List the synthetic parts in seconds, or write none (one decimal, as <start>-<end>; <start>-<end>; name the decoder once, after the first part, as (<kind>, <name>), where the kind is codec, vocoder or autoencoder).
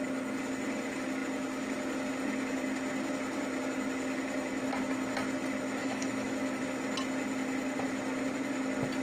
5.8-6.6 (autoencoder, DAC-VAE)